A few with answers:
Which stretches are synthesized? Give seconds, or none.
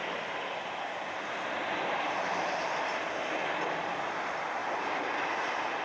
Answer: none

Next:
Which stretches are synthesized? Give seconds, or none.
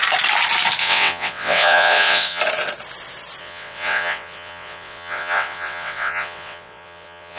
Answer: 0.8-2.4 (vocoder, WaveNeXt); 3.4-7.4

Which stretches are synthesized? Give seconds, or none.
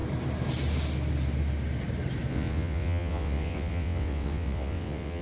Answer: 2.3-5.2 (vocoder, WaveNeXt)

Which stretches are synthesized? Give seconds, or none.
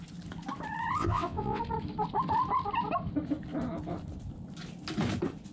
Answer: 1.0-1.6 (vocoder, WaveNeXt)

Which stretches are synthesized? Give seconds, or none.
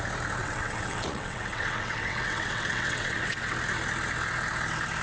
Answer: 0.4-3.4 (vocoder, WaveNeXt)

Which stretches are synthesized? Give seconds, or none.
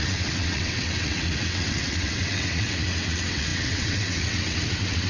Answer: 0.0-5.1 (vocoder, WaveNeXt)